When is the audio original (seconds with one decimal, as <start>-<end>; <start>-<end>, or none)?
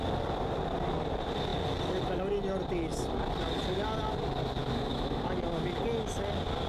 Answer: 0.0-4.6; 5.2-6.7